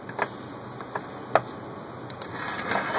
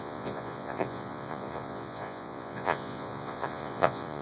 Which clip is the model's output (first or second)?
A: second